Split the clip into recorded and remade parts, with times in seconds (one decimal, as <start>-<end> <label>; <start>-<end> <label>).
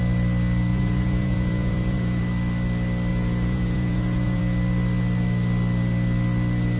0.0-0.7 recorded; 0.7-2.2 remade; 2.2-3.1 recorded; 3.1-4.4 remade; 4.4-6.8 recorded